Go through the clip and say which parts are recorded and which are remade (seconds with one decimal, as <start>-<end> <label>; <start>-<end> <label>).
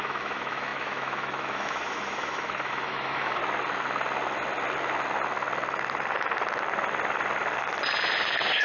0.0-3.4 remade; 3.4-8.6 recorded